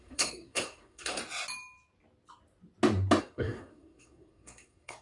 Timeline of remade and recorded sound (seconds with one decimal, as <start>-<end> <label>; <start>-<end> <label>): 0.0-1.2 remade; 1.2-3.2 recorded; 3.2-5.0 remade